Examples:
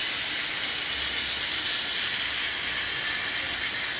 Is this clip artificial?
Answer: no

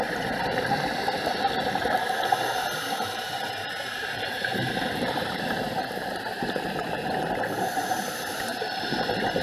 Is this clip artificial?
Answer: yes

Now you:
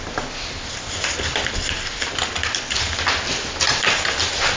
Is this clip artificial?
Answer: no